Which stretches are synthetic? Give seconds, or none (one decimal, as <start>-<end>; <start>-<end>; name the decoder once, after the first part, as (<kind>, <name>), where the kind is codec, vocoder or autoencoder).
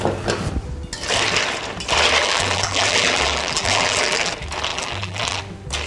2.2-4.3 (vocoder, BigVGAN v2); 4.7-5.4